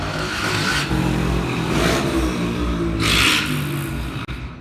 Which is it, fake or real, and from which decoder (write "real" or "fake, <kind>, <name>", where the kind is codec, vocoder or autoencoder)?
real